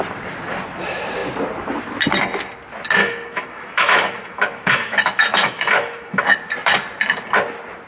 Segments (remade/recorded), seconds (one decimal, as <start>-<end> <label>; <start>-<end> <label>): 0.0-3.0 recorded; 3.0-6.2 remade; 6.2-7.9 recorded